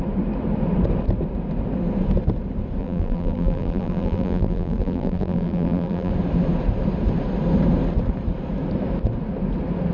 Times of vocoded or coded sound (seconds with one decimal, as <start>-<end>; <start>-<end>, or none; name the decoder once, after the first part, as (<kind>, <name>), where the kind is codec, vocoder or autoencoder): 2.8-6.1 (vocoder, BigVGAN v2)